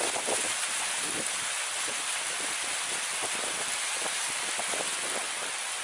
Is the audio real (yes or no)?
yes